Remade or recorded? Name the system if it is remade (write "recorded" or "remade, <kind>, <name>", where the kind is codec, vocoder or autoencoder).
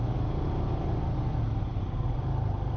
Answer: recorded